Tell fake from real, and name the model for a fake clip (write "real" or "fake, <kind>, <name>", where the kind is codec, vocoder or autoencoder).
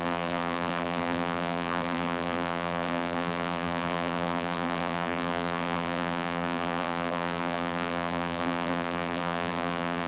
fake, vocoder, BigVGAN v2